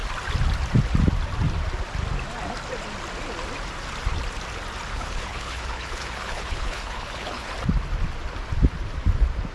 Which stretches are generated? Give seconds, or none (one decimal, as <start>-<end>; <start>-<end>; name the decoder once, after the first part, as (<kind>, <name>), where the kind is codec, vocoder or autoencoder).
4.9-7.5 (codec, HILCodec)